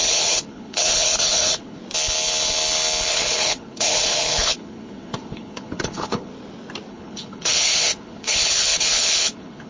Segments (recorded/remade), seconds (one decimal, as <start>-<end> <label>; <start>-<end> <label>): 0.0-1.8 remade; 1.8-3.1 recorded; 3.1-6.3 remade; 6.3-6.9 recorded; 6.9-9.7 remade